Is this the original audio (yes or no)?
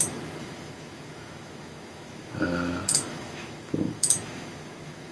no